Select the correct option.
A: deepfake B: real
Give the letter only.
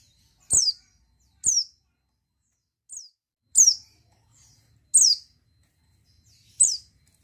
B